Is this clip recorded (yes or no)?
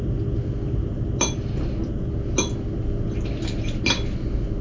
yes